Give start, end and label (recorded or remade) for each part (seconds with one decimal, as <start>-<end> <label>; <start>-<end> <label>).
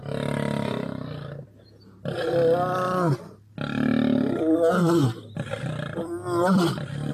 0.0-7.1 recorded